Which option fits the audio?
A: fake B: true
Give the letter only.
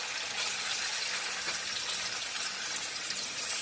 B